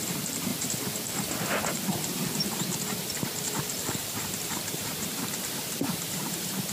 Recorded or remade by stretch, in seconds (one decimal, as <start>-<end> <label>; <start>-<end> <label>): 0.0-0.5 remade; 0.5-4.0 recorded; 4.0-6.7 remade